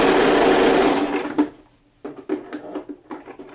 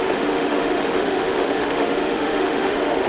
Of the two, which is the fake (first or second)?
second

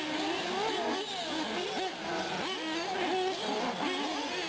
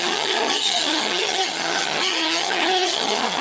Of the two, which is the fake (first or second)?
second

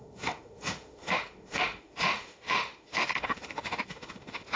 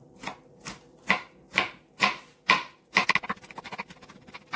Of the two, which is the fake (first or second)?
first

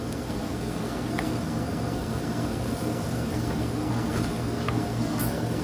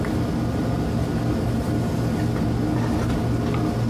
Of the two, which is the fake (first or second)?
first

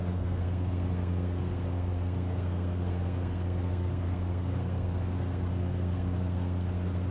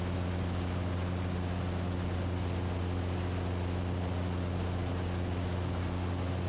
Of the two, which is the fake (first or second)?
first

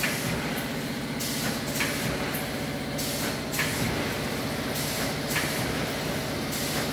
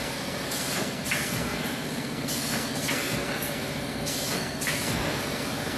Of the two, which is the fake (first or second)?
second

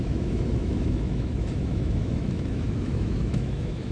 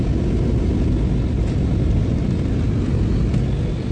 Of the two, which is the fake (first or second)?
first